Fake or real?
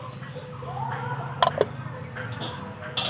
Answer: real